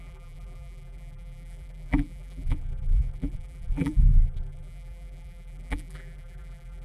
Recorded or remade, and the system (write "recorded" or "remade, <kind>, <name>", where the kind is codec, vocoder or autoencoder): remade, vocoder, BigVGAN v2